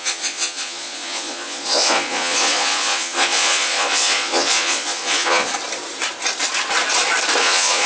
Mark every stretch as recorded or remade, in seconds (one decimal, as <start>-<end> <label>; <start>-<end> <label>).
0.0-5.5 remade; 5.5-7.4 recorded; 7.4-7.9 remade